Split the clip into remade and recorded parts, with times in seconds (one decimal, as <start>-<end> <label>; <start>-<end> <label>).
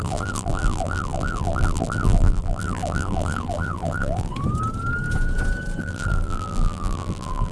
0.0-4.3 remade; 4.3-5.8 recorded; 5.8-7.5 remade